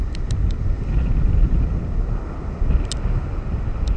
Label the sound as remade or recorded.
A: recorded